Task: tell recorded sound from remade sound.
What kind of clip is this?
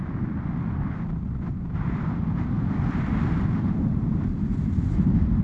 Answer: recorded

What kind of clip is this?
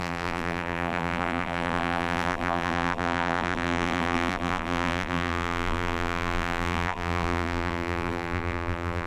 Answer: remade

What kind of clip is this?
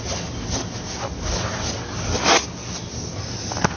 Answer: recorded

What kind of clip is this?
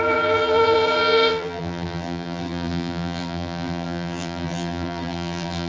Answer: remade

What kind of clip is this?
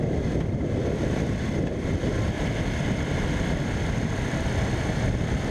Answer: remade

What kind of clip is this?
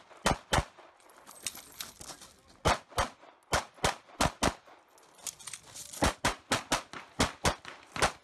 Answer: recorded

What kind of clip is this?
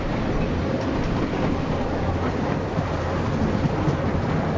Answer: recorded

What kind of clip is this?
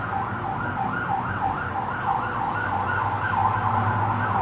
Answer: recorded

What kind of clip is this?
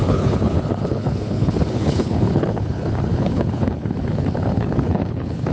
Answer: remade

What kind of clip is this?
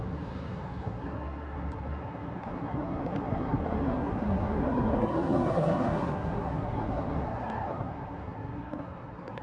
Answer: remade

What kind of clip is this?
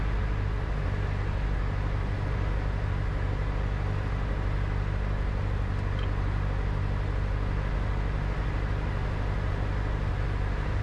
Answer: recorded